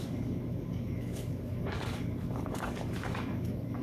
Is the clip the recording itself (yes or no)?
no